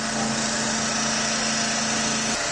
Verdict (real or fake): real